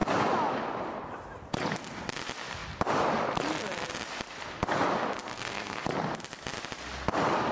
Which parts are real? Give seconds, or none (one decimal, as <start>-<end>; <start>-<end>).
0.0-5.3; 5.8-7.5